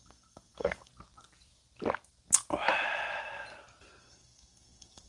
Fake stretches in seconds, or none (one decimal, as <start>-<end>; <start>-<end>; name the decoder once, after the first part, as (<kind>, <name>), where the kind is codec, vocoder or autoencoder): 0.0-0.9 (codec, SNAC); 4.0-5.1